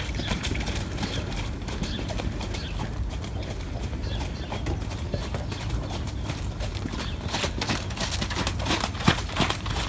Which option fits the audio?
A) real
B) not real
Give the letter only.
A